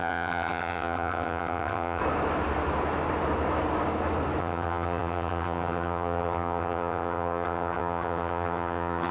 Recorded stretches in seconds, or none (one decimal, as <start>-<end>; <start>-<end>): 2.0-4.4